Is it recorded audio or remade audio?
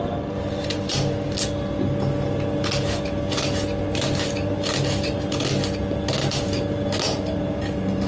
recorded